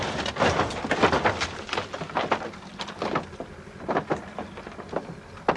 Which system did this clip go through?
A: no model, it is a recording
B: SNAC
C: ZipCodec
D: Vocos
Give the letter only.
A